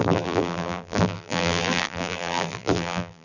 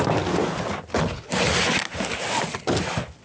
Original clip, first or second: second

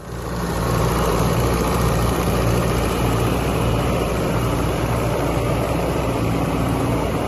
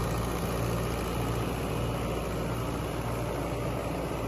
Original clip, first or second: second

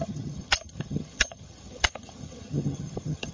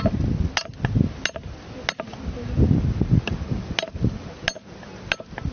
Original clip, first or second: second